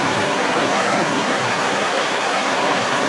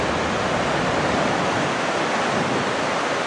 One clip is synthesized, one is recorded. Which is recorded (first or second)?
second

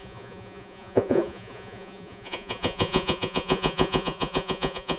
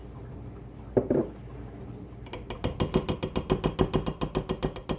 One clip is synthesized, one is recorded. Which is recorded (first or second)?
second